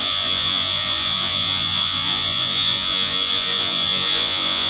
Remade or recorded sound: remade